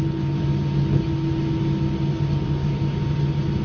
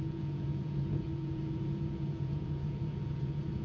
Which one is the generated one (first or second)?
second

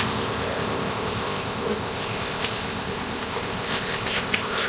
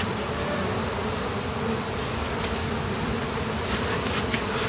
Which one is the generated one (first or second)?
first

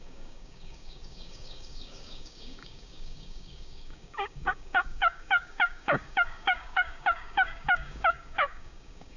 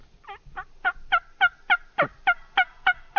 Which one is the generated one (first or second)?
first